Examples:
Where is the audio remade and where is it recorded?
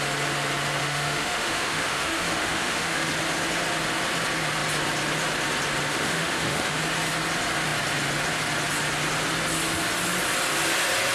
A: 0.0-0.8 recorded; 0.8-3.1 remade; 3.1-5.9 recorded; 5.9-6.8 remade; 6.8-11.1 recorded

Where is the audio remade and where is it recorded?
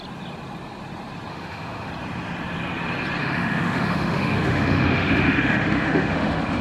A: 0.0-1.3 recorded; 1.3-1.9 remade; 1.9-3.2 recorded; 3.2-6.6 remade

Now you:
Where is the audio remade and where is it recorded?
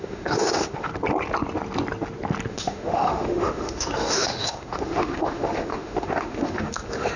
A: 0.0-0.9 remade; 0.9-2.5 recorded; 2.5-7.2 remade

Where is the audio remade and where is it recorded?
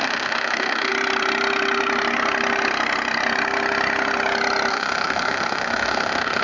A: 0.0-0.9 remade; 0.9-4.7 recorded; 4.7-6.4 remade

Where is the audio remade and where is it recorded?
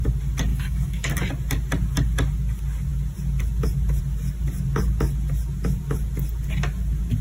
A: 0.0-0.5 recorded; 0.5-1.1 remade; 1.1-7.2 recorded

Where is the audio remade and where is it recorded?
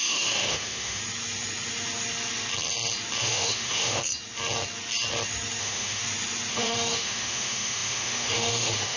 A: 0.0-1.0 remade; 1.0-3.2 recorded; 3.2-4.0 remade; 4.0-5.6 recorded; 5.6-6.0 remade; 6.0-6.5 recorded; 6.5-9.0 remade